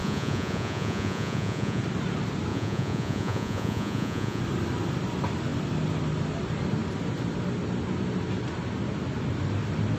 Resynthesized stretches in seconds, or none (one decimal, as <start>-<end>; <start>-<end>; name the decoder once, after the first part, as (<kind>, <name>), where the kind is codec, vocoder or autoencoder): 0.0-1.8 (vocoder, Vocos); 2.5-4.4